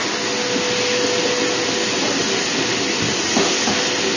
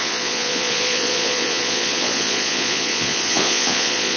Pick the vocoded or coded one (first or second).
second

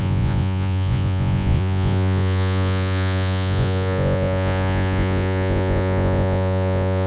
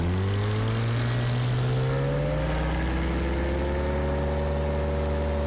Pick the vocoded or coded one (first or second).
first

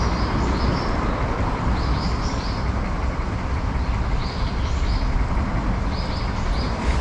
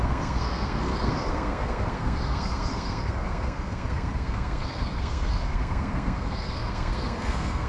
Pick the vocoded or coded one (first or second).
second